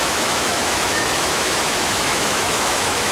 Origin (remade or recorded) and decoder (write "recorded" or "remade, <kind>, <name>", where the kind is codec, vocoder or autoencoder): remade, autoencoder, DAC-VAE